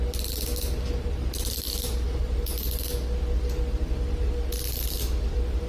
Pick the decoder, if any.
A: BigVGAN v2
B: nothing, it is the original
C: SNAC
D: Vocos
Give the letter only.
B